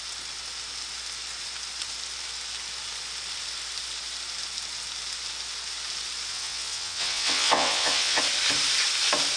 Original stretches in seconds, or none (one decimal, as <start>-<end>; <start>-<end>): 0.0-6.3; 8.2-9.4